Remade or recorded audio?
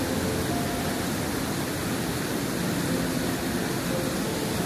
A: recorded